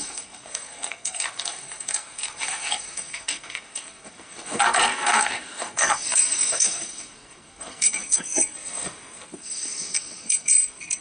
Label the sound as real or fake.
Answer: fake